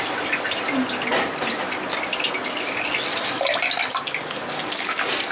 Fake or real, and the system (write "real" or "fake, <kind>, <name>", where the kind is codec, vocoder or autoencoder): real